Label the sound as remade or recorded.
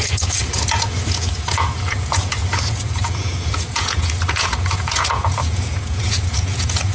remade